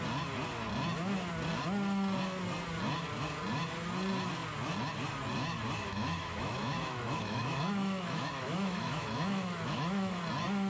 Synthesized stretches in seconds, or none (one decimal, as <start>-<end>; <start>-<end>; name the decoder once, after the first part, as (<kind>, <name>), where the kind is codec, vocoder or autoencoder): 5.9-10.2 (autoencoder, DAC-VAE)